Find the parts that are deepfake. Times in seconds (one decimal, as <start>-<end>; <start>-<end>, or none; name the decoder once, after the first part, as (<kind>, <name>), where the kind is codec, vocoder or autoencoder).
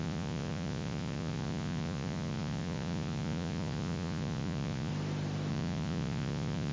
0.0-4.9 (vocoder, Vocos); 5.5-6.7